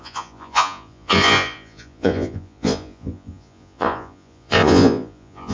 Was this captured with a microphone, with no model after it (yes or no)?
no